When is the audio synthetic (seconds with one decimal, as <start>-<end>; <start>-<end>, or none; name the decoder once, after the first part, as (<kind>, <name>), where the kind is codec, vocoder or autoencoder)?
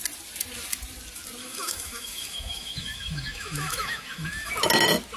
1.4-4.5 (autoencoder, DAC-VAE)